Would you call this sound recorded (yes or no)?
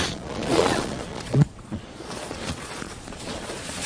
no